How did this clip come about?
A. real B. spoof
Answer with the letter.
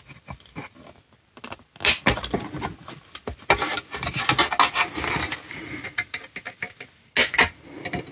A